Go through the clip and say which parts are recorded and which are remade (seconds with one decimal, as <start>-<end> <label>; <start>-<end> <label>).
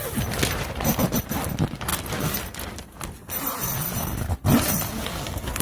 0.0-5.6 recorded